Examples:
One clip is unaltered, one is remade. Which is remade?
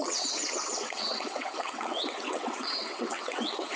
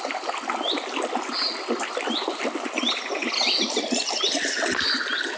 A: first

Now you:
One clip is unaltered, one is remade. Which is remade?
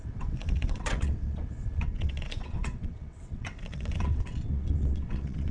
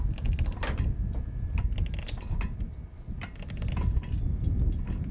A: first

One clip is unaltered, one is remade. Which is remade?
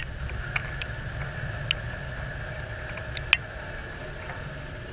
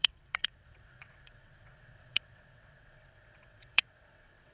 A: second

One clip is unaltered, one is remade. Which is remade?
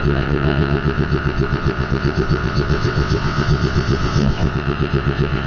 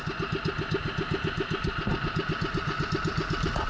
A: first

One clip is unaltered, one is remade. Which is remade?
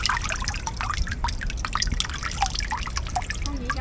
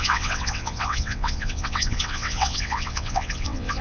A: second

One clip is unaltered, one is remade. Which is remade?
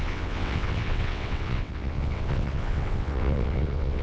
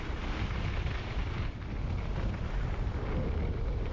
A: first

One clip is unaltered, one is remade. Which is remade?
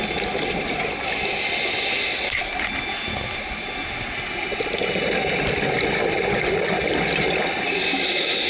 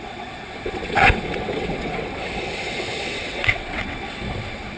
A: second